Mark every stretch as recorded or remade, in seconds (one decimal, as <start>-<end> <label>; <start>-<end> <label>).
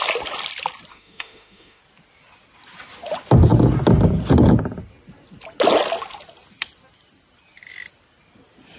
0.0-0.9 recorded; 0.9-1.8 remade; 1.8-8.8 recorded